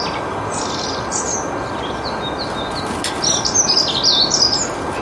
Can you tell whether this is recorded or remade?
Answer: recorded